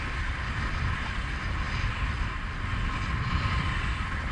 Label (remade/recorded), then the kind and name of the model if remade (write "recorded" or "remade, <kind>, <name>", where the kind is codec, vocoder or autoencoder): recorded